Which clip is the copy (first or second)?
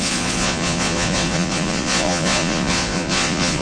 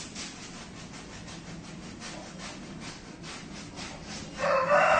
first